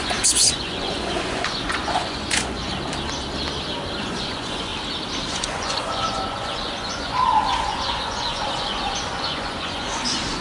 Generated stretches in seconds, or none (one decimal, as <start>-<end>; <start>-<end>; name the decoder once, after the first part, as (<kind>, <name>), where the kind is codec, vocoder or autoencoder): 0.0-2.7 (vocoder, Vocos); 4.0-4.7; 5.3-10.4